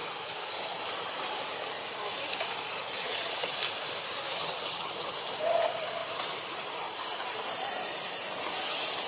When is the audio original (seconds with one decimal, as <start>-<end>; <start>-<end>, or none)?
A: 0.0-3.0; 3.5-4.4; 5.1-9.1